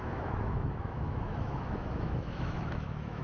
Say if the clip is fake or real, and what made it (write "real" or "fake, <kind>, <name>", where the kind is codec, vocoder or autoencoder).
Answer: fake, autoencoder, DAC-VAE